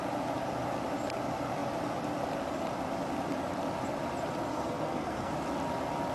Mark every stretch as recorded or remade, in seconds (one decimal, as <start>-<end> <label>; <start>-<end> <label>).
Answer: 0.0-4.5 recorded; 4.5-5.3 remade; 5.3-6.1 recorded